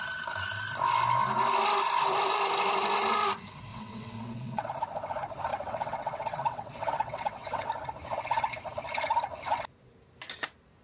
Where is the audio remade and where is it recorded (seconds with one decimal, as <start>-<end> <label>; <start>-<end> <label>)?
0.0-3.7 recorded; 3.7-4.7 remade; 4.7-5.5 recorded; 5.5-7.7 remade; 7.7-10.8 recorded